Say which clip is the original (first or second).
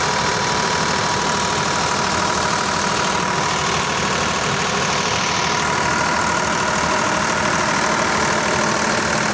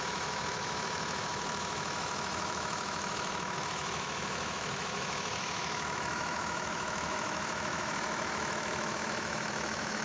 first